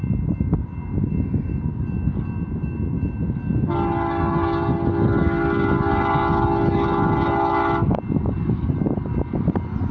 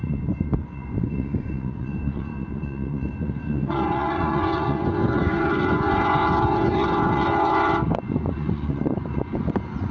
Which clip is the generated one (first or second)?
second